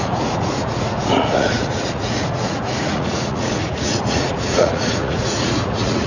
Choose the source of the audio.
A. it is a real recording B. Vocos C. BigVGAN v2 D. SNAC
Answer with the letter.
B